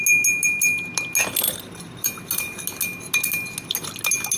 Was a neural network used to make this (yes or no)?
no